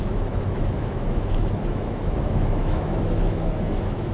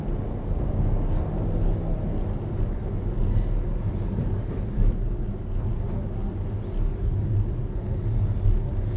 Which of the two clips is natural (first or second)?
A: second